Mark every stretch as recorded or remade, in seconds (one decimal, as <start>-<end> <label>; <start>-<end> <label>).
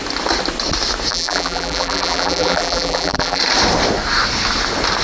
0.0-1.1 recorded; 1.1-3.4 remade; 3.4-5.0 recorded